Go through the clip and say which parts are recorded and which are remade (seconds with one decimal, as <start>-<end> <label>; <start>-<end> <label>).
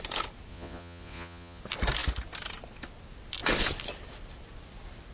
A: 0.0-0.5 recorded; 0.5-1.6 remade; 1.6-5.1 recorded